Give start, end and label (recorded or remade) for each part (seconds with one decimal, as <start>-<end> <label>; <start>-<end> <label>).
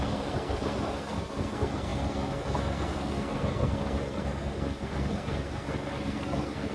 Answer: 0.0-6.7 remade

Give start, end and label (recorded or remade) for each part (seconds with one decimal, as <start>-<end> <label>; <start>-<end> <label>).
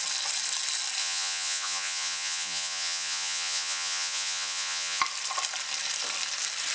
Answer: 0.0-1.0 recorded; 1.0-5.0 remade; 5.0-6.7 recorded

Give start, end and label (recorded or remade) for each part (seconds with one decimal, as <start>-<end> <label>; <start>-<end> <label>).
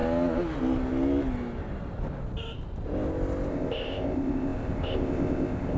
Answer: 0.0-3.5 recorded; 3.5-5.8 remade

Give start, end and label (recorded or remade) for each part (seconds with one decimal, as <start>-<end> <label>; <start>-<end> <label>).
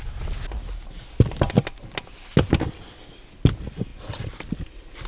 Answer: 0.0-5.1 recorded